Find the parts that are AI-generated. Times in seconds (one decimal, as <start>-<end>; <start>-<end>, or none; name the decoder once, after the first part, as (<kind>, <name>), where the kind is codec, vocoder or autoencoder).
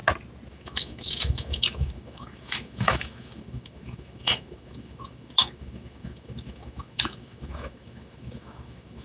0.5-9.0 (autoencoder, DAC-VAE)